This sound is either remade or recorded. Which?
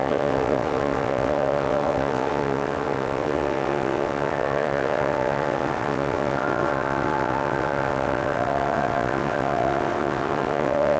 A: remade